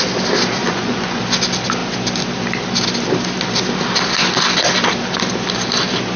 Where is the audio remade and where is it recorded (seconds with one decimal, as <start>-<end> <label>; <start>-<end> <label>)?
0.0-0.6 recorded; 0.6-1.2 remade; 1.2-6.2 recorded